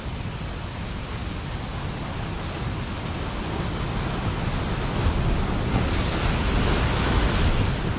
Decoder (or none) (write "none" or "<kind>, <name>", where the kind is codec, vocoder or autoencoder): none